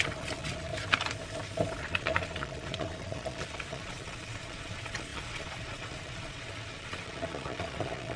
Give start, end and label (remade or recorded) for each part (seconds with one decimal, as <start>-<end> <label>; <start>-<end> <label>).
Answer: 0.0-0.7 remade; 0.7-1.8 recorded; 1.8-8.2 remade